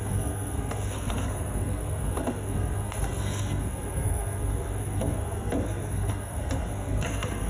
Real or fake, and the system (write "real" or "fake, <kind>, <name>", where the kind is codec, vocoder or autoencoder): fake, codec, SNAC